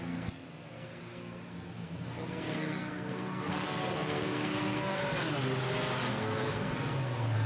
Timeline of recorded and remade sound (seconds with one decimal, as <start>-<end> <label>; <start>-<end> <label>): 0.0-5.0 remade; 5.0-6.1 recorded; 6.1-7.5 remade